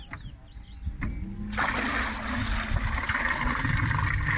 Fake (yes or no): no